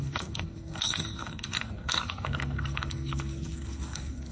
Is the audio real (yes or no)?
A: no